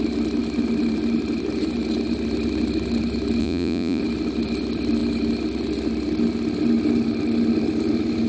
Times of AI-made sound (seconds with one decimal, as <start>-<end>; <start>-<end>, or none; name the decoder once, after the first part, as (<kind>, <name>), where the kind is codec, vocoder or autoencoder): 3.4-4.0 (vocoder, Vocos)